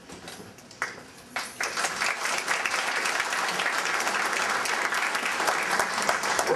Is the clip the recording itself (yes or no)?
yes